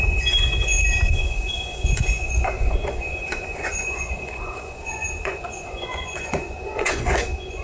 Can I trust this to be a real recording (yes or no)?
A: no